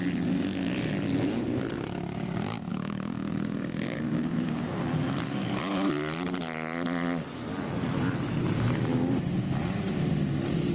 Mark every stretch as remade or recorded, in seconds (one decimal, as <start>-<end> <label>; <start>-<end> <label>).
0.0-2.7 recorded; 2.7-4.8 remade; 4.8-10.7 recorded